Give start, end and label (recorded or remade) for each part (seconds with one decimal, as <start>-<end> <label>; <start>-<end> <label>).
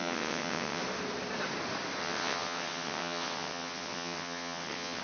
0.0-0.8 remade; 0.8-2.0 recorded; 2.0-5.0 remade